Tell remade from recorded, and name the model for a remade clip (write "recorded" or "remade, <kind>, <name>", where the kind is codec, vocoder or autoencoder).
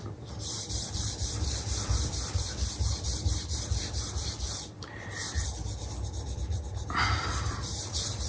remade, vocoder, BigVGAN v2